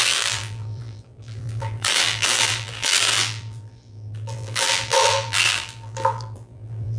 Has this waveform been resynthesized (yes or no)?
yes